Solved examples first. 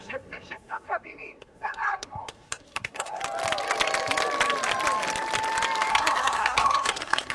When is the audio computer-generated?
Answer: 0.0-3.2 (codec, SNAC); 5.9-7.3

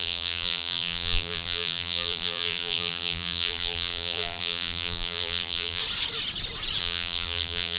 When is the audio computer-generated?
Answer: 0.0-5.8 (vocoder, BigVGAN v2); 6.8-7.8

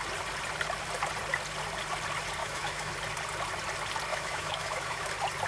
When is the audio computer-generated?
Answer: 2.4-2.9 (autoencoder, DAC-VAE); 4.1-5.1

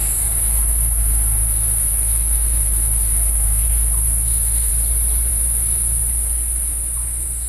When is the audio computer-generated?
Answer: 0.0-4.7 (autoencoder, DAC-VAE); 5.3-7.5